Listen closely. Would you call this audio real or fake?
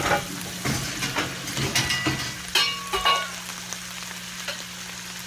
real